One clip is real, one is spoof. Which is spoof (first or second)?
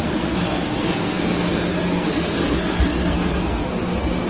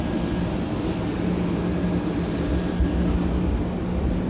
first